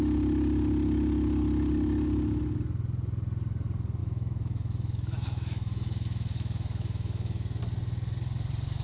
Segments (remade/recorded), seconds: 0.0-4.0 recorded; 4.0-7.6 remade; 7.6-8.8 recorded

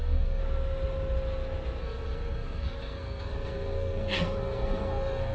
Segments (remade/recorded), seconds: 0.0-0.4 remade; 0.4-1.8 recorded; 1.8-5.3 remade

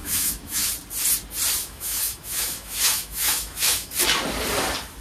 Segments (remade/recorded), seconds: 0.0-0.7 remade; 0.7-1.6 recorded; 1.6-3.9 remade; 3.9-5.0 recorded